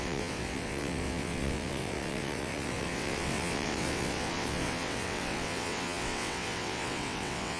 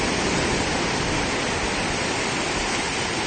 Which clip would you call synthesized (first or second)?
first